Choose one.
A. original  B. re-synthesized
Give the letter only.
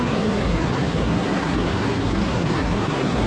B